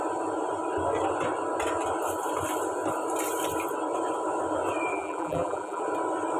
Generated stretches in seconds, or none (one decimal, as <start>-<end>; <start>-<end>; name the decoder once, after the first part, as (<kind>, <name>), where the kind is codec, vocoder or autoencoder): 4.9-5.8 (vocoder, BigVGAN v2)